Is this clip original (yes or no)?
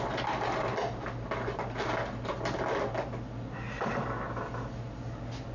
yes